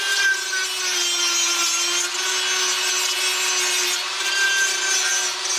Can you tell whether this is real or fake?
real